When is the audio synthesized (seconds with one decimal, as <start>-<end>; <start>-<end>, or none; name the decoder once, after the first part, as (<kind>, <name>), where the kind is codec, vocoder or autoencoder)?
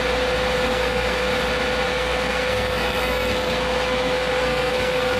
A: 0.7-1.3 (codec, SNAC); 1.9-5.2